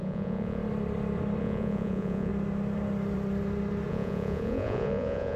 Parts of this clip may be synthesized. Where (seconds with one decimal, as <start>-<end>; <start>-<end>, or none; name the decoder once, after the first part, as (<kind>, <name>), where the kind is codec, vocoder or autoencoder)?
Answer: 0.0-0.6 (vocoder, Vocos); 1.4-2.3; 3.9-5.4